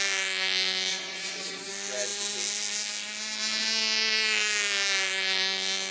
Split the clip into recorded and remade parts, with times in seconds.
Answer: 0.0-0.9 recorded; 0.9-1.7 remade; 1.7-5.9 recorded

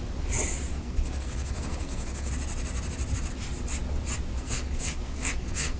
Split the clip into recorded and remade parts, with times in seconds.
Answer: 0.0-0.7 recorded; 0.7-2.3 remade; 2.3-4.3 recorded; 4.3-5.8 remade

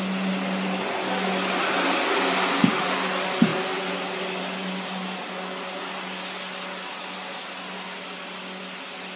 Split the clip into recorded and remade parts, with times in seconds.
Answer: 0.0-9.2 recorded

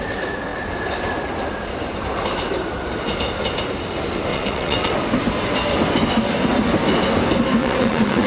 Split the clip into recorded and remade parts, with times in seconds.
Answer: 0.0-4.3 recorded; 4.3-4.9 remade; 4.9-7.6 recorded; 7.6-8.3 remade

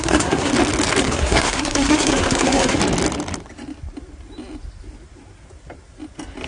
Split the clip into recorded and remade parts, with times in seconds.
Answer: 0.0-0.5 remade; 0.5-1.0 recorded; 1.0-2.8 remade; 2.8-6.5 recorded

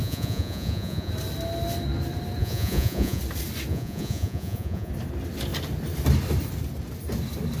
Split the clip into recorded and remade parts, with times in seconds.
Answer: 0.0-1.1 remade; 1.1-2.4 recorded; 2.4-3.2 remade; 3.2-3.7 recorded; 3.7-4.9 remade; 4.9-7.6 recorded